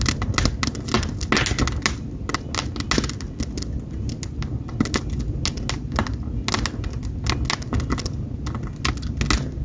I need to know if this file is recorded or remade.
recorded